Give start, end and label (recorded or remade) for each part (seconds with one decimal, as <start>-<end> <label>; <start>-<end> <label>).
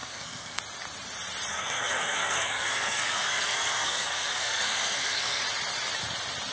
0.0-0.6 remade; 0.6-1.5 recorded; 1.5-5.4 remade; 5.4-6.5 recorded